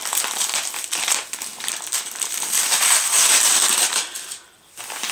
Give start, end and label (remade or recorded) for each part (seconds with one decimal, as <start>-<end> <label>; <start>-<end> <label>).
0.0-1.5 recorded; 1.5-4.6 remade; 4.6-5.1 recorded